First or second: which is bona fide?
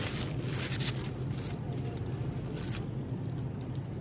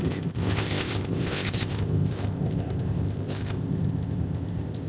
first